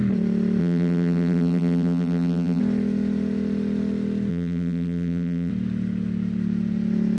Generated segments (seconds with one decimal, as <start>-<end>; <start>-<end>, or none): 0.6-2.6; 4.3-5.5